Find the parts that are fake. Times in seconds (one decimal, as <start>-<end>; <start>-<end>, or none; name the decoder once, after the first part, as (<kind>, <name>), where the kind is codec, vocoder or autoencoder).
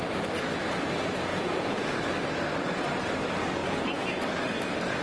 1.3-2.0 (vocoder, Vocos); 3.6-4.2